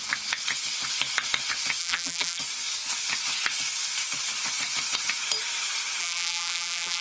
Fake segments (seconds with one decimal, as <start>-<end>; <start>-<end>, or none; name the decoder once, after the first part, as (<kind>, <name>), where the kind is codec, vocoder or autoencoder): 1.8-2.4 (vocoder, BigVGAN v2); 6.0-7.0

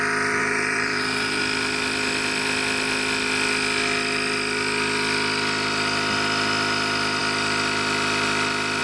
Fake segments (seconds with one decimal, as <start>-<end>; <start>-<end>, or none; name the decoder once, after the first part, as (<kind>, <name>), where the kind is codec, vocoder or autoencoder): 0.4-1.4 (vocoder, BigVGAN v2)

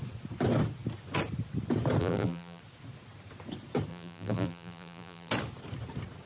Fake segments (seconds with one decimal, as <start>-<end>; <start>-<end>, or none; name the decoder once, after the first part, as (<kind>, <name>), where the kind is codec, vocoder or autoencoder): 2.0-2.6 (vocoder, BigVGAN v2); 3.9-5.3

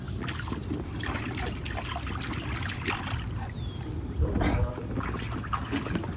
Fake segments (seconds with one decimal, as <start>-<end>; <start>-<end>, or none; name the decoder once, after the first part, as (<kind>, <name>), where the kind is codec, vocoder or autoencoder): 0.6-4.3 (vocoder, BigVGAN v2)

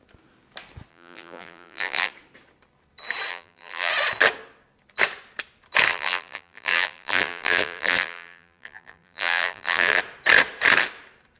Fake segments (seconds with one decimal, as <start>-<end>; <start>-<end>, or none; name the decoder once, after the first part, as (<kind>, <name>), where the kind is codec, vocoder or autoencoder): 0.9-2.1 (vocoder, BigVGAN v2); 3.3-3.9; 5.9-10.0

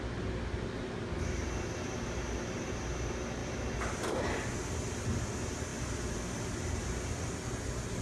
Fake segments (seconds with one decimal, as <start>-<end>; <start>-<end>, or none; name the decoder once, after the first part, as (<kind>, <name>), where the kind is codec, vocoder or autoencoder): 5.7-7.3 (vocoder, BigVGAN v2)